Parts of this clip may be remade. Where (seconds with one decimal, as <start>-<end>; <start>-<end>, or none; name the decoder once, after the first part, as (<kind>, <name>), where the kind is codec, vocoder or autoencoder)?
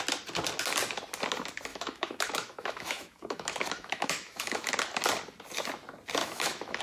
1.7-4.7 (autoencoder, DAC-VAE); 6.2-6.8